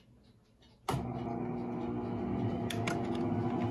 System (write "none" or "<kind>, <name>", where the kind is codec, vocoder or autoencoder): none